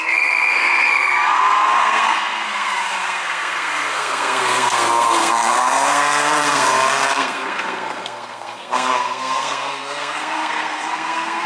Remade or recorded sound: remade